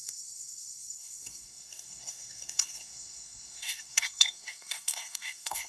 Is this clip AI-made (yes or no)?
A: yes